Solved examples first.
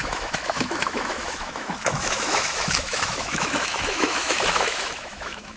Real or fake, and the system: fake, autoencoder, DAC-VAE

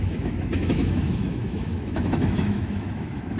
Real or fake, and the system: fake, autoencoder, DAC-VAE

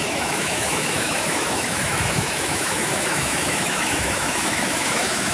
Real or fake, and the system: fake, autoencoder, DAC-VAE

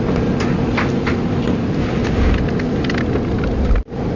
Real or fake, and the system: real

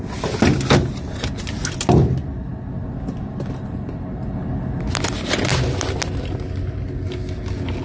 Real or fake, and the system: real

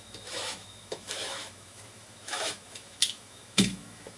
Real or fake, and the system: fake, autoencoder, DAC-VAE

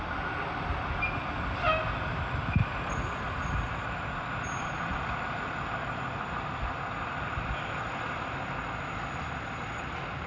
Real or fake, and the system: real